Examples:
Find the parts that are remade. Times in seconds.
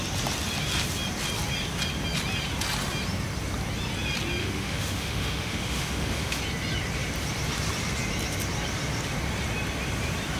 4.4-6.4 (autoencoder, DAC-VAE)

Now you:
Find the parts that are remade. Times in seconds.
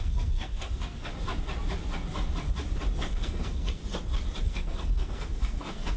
0.0-1.1 (codec, SNAC); 3.0-3.8; 4.4-6.0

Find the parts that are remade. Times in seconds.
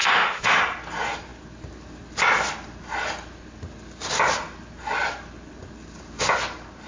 0.0-0.6 (autoencoder, DAC-VAE)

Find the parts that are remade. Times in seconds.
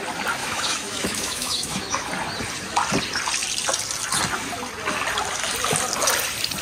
0.4-2.1 (autoencoder, DAC-VAE)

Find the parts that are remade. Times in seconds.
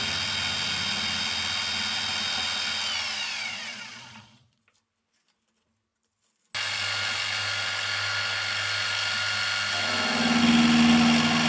3.3-4.6 (vocoder, Vocos)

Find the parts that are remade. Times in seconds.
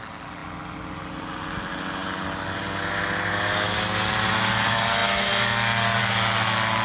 none